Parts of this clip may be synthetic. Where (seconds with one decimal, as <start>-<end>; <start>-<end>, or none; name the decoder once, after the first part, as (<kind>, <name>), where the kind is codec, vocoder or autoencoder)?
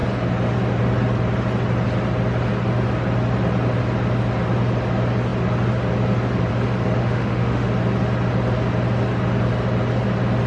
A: 7.0-7.7 (autoencoder, DAC-VAE)